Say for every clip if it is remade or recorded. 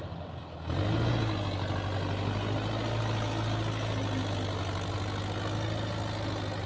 recorded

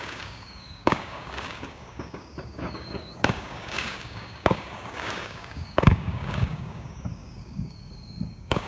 remade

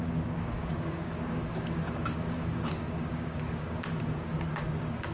remade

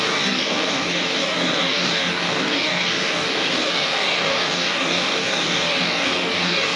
remade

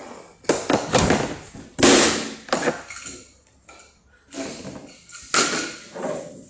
recorded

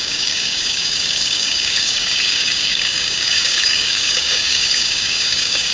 remade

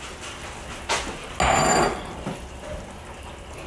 recorded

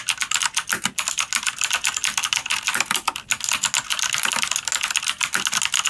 recorded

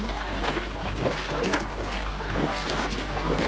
remade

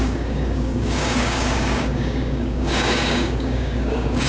remade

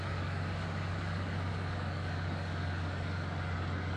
remade